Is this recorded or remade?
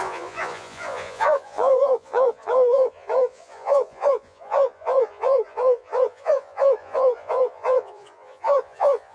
remade